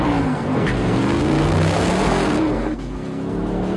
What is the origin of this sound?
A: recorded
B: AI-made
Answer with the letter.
B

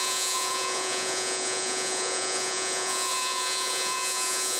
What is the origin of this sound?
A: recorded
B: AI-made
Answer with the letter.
B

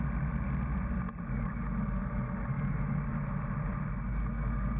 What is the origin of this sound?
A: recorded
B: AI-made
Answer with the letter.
A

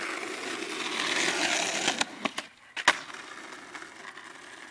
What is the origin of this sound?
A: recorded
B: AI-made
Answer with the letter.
A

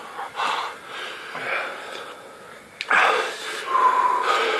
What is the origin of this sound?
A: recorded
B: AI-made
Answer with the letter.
B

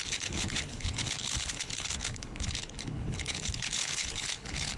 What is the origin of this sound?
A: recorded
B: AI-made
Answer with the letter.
B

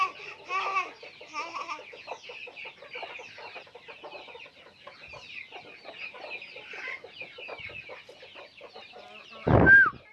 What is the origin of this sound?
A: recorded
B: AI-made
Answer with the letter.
A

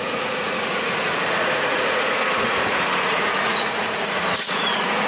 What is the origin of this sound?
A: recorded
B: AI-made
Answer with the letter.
B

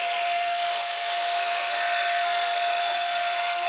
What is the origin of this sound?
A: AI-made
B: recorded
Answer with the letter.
A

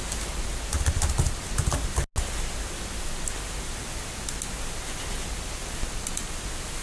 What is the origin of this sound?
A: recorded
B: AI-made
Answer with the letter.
A